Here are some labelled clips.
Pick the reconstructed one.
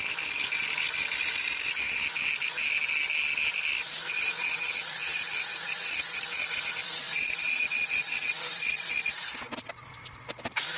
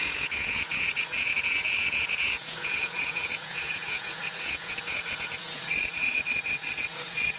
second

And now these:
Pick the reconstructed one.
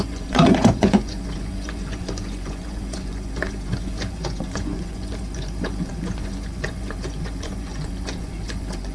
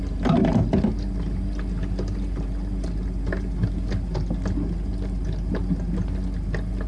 first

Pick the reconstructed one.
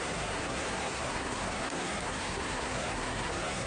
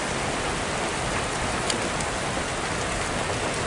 first